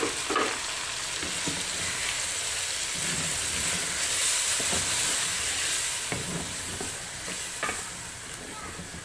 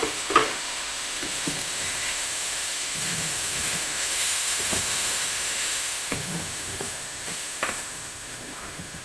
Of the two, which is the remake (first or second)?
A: second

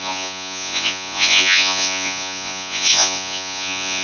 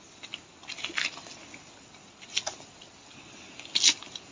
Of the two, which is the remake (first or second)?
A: first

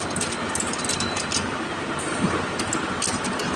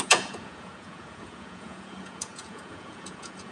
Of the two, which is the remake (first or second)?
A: second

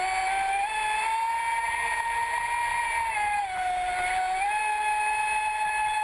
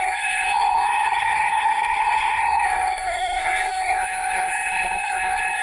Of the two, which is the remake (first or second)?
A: second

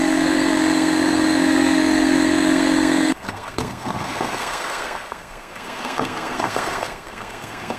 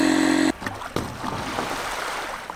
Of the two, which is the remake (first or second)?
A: first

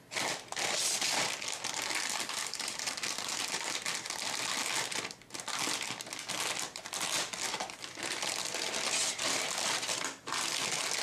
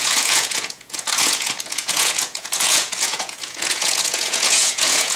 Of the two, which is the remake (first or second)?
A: second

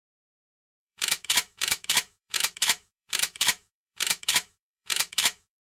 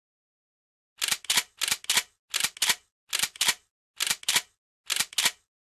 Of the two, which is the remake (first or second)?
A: first